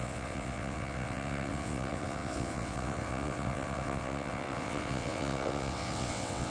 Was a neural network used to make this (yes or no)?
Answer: yes